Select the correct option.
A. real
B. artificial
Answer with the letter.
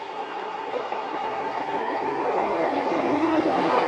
B